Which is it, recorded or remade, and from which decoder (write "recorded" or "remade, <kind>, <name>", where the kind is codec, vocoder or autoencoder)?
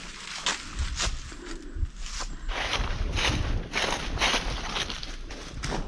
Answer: recorded